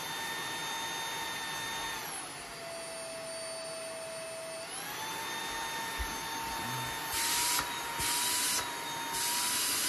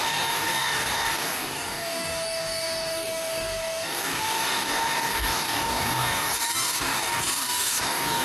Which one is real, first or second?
first